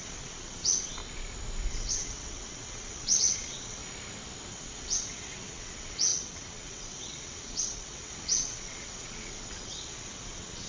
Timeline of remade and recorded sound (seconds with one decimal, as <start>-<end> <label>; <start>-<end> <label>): 0.0-1.0 remade; 1.0-1.7 recorded; 1.7-3.8 remade; 3.8-4.5 recorded; 4.5-10.7 remade